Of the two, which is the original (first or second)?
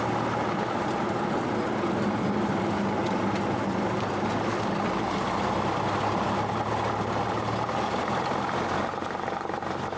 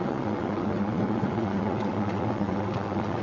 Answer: first